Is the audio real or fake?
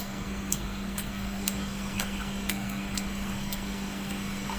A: fake